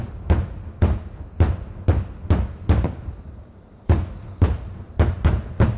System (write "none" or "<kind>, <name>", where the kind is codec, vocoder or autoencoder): none